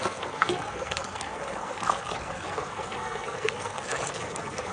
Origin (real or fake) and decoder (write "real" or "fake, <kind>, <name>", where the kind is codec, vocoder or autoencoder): fake, codec, SNAC